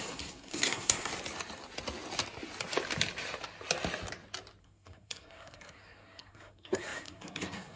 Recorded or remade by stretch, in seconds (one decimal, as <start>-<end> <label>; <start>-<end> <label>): 0.0-1.1 remade; 1.1-4.6 recorded; 4.6-7.8 remade